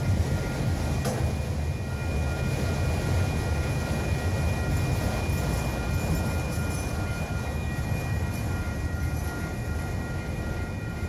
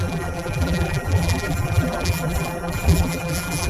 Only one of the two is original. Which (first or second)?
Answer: first